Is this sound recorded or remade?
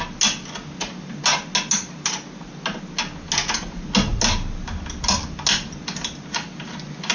recorded